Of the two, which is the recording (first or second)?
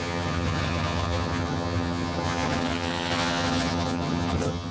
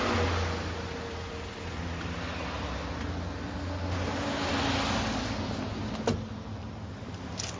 second